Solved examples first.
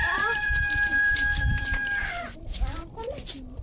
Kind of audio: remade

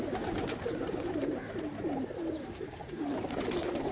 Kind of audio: remade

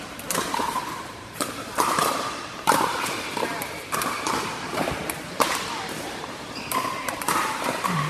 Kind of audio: remade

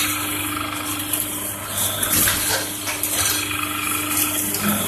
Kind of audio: recorded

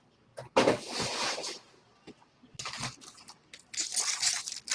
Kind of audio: recorded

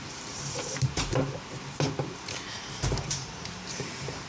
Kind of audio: remade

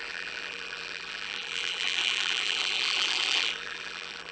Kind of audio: remade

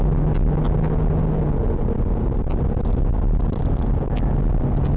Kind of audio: recorded